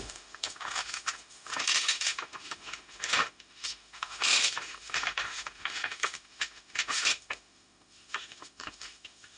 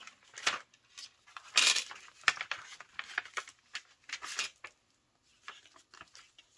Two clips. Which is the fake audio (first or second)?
first